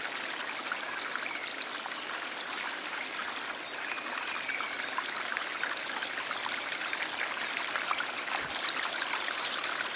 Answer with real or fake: real